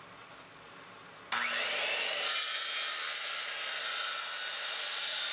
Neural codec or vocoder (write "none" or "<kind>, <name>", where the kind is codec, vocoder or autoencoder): none